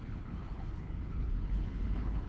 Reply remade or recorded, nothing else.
remade